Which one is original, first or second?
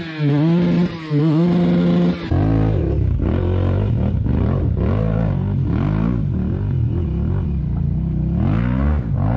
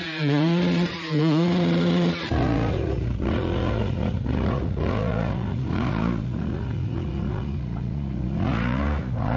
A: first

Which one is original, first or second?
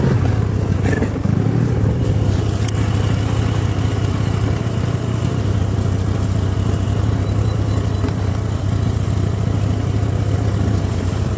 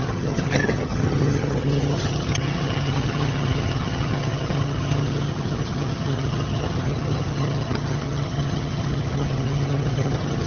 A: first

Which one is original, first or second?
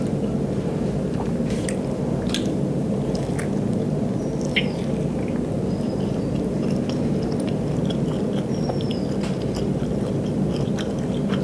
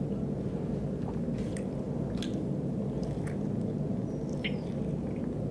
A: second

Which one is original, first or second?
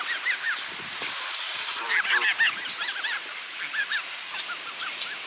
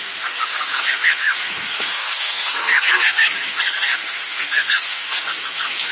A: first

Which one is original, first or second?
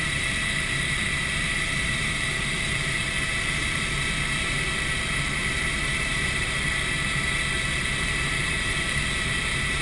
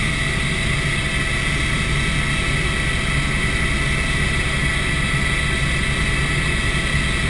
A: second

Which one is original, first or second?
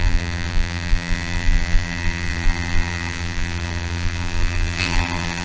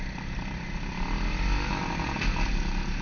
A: second